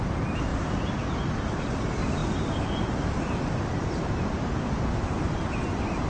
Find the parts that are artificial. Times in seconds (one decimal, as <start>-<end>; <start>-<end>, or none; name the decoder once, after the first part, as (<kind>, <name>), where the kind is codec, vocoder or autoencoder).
none